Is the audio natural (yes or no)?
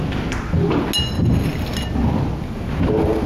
yes